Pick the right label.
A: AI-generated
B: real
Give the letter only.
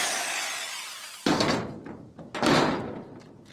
B